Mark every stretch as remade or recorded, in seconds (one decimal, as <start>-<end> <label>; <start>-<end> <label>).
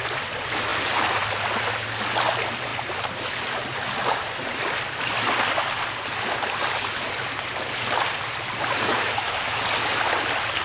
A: 0.0-8.9 recorded; 8.9-9.6 remade; 9.6-10.6 recorded